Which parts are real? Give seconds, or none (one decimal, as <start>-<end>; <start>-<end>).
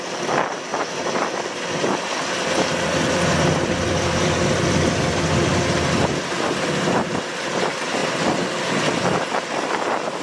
0.0-0.7; 5.6-10.2